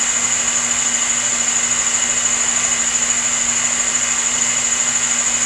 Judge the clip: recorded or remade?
recorded